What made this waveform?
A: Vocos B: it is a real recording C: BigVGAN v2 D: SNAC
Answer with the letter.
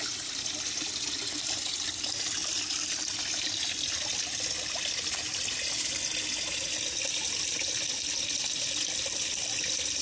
B